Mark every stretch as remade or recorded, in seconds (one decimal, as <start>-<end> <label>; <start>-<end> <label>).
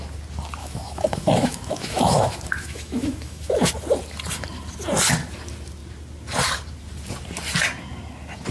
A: 0.0-0.6 recorded; 0.6-3.7 remade; 3.7-8.5 recorded